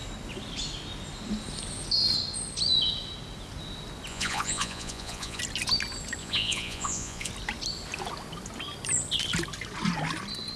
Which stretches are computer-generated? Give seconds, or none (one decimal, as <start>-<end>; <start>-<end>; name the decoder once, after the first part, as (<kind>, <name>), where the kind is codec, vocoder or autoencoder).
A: 4.1-5.4 (vocoder, Vocos); 6.2-7.3